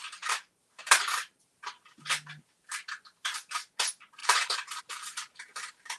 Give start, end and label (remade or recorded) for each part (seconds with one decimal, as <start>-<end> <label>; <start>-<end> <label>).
0.0-1.7 remade; 1.7-4.2 recorded; 4.2-4.8 remade; 4.8-6.0 recorded

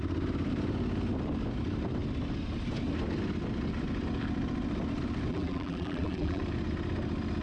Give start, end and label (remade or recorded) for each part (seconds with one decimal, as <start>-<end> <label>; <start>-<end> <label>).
0.0-5.3 recorded; 5.3-6.4 remade; 6.4-7.4 recorded

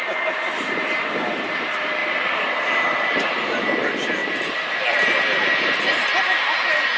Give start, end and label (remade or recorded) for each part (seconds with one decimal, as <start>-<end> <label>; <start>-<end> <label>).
0.0-2.0 recorded; 2.0-2.6 remade; 2.6-7.0 recorded

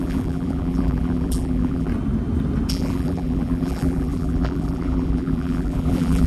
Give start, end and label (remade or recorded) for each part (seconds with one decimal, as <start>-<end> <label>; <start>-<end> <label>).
0.0-1.9 remade; 1.9-2.7 recorded; 2.7-6.3 remade